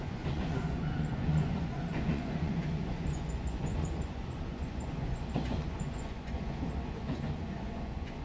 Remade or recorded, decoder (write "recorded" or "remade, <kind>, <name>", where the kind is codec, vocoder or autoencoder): remade, vocoder, Vocos